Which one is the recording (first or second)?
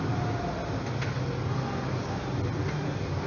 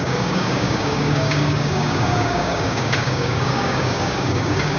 first